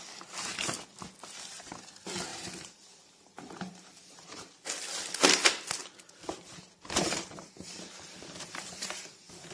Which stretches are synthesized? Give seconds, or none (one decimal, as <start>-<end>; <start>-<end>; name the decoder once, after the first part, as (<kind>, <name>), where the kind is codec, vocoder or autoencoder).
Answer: 2.3-4.5 (vocoder, BigVGAN v2); 5.8-9.5